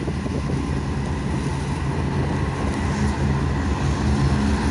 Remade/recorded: recorded